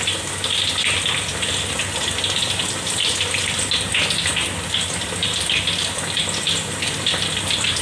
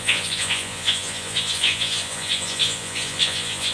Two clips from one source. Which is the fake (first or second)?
second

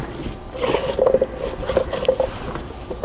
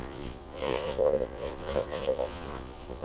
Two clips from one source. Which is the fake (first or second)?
second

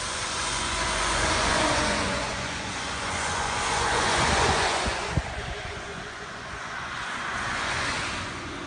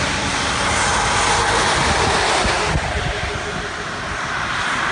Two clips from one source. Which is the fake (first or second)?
first